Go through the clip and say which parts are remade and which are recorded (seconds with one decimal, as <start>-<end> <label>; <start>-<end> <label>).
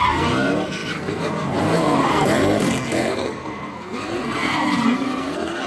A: 0.0-5.7 remade